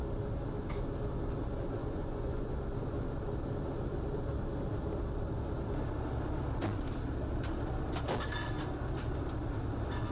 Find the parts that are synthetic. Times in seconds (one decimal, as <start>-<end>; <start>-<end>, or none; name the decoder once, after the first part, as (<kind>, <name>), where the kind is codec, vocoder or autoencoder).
1.8-2.5 (vocoder, Vocos)